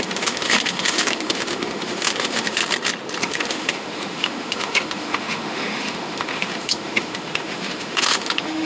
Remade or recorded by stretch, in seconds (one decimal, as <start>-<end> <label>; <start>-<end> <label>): 0.0-2.6 remade; 2.6-3.2 recorded; 3.2-8.7 remade